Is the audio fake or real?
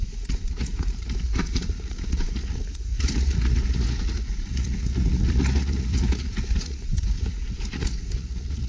fake